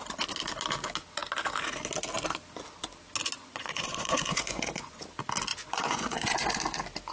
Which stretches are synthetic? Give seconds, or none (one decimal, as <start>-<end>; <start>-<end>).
3.4-5.0; 5.5-6.6